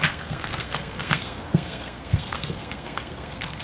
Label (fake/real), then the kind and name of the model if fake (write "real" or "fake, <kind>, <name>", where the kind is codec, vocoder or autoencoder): fake, codec, SNAC